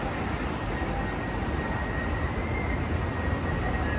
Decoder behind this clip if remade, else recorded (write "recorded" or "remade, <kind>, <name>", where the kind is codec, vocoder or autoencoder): recorded